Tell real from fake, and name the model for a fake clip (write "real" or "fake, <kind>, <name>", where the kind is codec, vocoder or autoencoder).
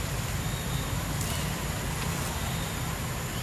real